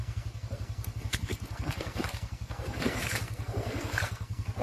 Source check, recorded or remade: remade